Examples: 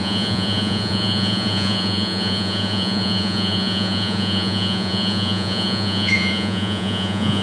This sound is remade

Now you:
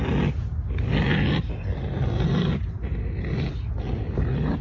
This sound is recorded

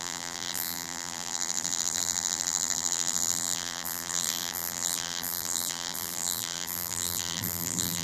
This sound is remade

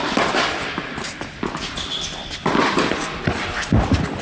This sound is recorded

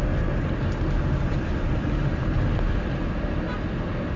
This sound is recorded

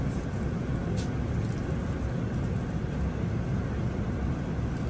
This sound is recorded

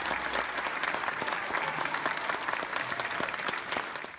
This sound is recorded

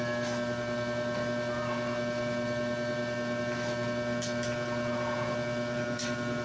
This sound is recorded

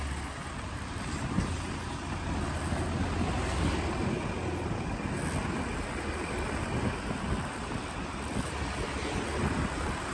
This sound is recorded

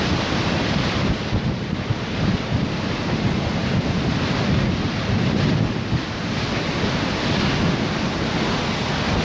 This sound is recorded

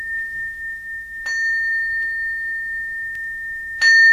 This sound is recorded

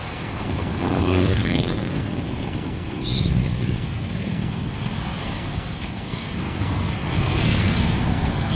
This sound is remade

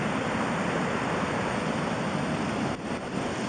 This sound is recorded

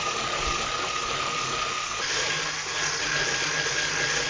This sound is recorded